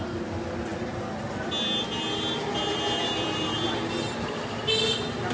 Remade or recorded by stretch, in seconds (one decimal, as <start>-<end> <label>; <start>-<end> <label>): 0.0-5.3 recorded